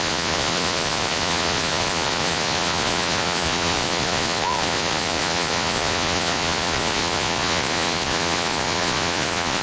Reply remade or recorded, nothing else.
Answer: remade